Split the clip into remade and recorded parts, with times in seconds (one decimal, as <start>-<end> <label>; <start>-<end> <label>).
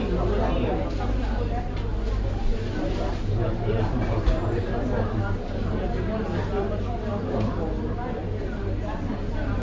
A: 0.0-9.6 recorded